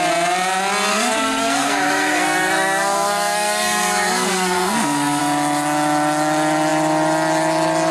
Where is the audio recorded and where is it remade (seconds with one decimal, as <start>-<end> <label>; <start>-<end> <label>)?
0.0-0.9 recorded; 0.9-5.2 remade; 5.2-7.9 recorded